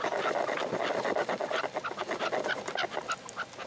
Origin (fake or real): real